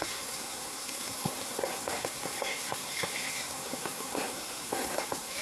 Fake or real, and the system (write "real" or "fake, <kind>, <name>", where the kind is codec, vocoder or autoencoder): fake, codec, SNAC